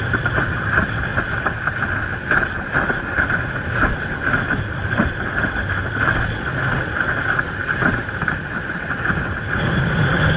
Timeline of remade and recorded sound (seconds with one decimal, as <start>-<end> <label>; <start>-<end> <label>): 0.0-10.4 recorded